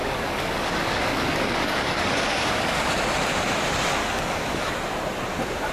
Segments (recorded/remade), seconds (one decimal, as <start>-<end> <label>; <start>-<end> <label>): 0.0-2.9 remade; 2.9-4.0 recorded; 4.0-4.7 remade; 4.7-5.7 recorded